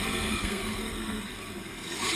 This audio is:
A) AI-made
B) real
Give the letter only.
A